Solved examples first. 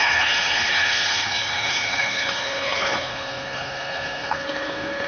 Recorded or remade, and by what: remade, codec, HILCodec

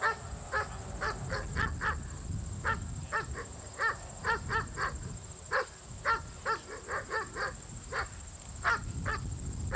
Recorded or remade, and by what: recorded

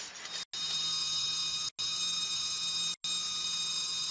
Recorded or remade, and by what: recorded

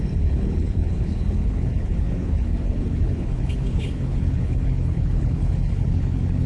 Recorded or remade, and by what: remade, codec, HILCodec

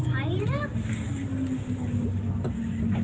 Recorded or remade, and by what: recorded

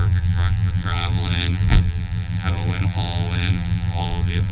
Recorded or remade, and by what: remade, vocoder, BigVGAN v2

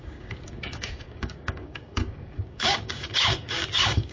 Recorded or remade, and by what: remade, codec, DAC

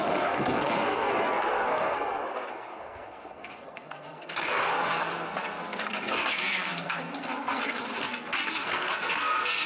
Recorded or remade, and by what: remade, codec, SNAC